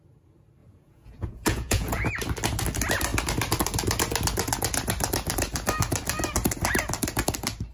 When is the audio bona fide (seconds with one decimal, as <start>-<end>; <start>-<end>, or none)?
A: 0.0-0.6; 2.1-7.7